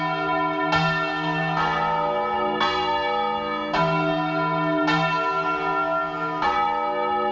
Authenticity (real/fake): real